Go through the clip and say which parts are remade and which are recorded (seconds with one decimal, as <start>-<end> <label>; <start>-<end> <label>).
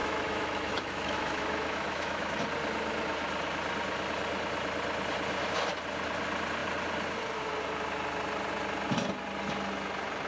0.0-2.4 remade; 2.4-10.3 recorded